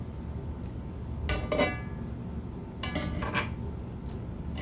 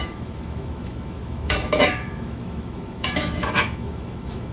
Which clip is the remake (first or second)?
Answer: second